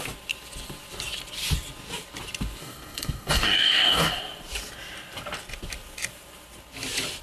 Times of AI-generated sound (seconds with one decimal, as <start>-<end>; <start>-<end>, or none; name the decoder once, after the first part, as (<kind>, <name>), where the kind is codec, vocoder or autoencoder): 2.6-4.2 (codec, DAC)